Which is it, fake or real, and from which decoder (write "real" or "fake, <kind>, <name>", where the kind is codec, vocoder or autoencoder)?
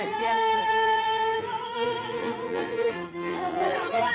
fake, vocoder, Vocos